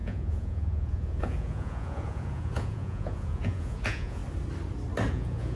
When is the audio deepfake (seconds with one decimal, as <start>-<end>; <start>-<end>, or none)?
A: 0.0-4.2; 5.1-5.6